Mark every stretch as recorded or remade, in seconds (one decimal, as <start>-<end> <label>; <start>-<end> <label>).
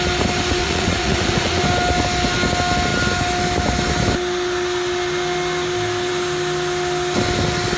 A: 0.0-0.6 recorded; 0.6-1.6 remade; 1.6-7.8 recorded